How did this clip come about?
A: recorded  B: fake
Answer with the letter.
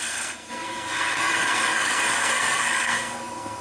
B